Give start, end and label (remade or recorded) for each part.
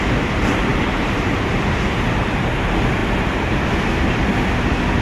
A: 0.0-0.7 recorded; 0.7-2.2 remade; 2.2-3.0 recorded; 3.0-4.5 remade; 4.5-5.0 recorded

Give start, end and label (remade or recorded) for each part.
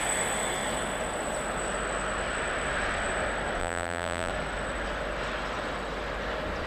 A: 0.0-3.6 recorded; 3.6-4.3 remade; 4.3-6.7 recorded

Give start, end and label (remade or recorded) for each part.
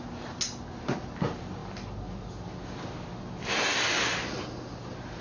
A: 0.0-5.2 recorded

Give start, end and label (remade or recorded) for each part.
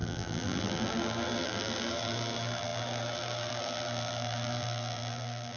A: 0.0-5.6 remade